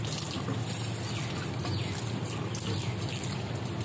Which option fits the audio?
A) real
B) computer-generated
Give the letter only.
A